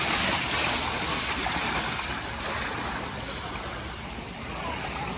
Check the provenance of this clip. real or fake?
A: fake